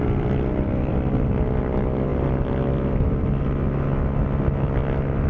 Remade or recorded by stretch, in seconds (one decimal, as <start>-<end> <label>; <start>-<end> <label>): 0.0-5.3 recorded